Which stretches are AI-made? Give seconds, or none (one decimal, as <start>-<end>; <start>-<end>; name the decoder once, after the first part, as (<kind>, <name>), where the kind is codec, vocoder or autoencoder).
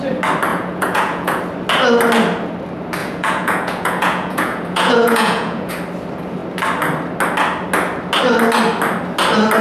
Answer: 0.5-1.4 (vocoder, Vocos); 3.0-5.7